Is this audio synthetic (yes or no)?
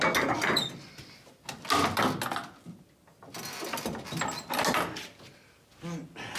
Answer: no